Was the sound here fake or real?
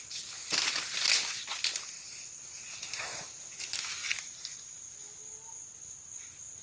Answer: real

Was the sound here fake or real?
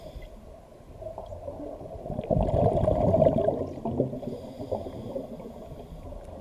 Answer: real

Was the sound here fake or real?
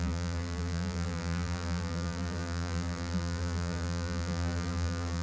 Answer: fake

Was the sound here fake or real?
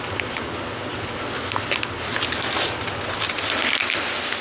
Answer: real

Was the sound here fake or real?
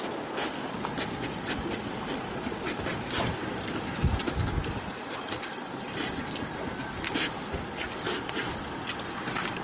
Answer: real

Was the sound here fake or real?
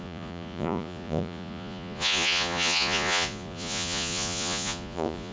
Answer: fake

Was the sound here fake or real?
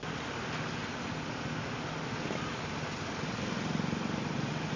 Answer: real